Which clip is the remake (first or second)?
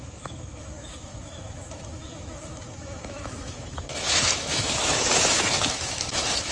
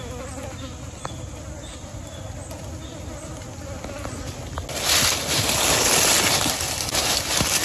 first